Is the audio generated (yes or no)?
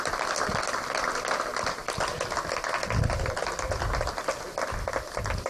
no